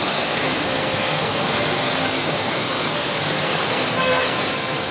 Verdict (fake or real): fake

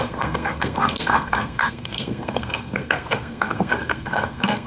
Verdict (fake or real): fake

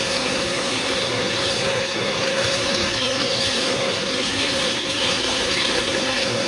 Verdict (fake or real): fake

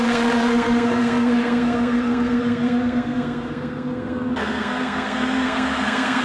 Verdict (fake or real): fake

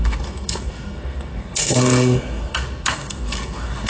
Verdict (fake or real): fake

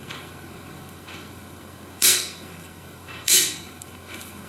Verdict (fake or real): fake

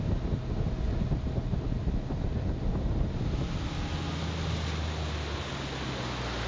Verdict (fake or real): real